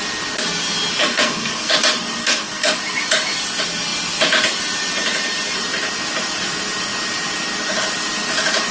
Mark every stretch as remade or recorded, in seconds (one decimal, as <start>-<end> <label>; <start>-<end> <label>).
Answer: 0.0-1.0 recorded; 1.0-1.7 remade; 1.7-2.2 recorded; 2.2-2.8 remade; 2.8-8.7 recorded